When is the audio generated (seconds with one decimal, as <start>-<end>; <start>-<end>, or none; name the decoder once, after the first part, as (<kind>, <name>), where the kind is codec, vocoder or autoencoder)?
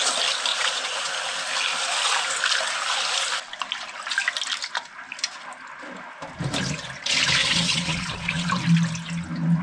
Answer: 0.5-1.1 (vocoder, Vocos); 7.4-8.5